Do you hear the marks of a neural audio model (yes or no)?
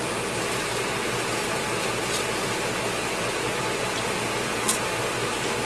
no